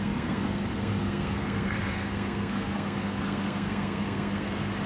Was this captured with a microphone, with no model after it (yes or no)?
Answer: no